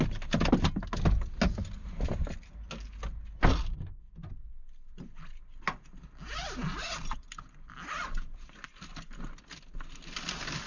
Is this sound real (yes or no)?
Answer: yes